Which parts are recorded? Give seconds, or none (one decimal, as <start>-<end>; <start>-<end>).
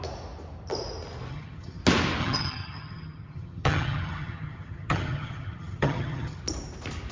0.0-1.3; 1.8-2.2; 6.4-7.1